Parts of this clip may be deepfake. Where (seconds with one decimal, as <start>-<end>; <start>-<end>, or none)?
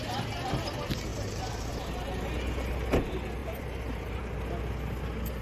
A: 1.1-1.7; 3.4-4.2